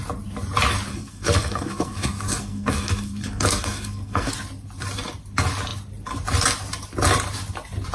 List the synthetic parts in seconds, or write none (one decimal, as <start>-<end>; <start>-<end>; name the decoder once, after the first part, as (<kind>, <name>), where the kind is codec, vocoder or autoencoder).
0.9-4.3 (codec, SNAC)